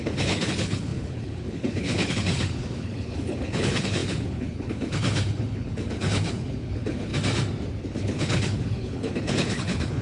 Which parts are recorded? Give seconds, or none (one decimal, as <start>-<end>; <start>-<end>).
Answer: 7.1-7.8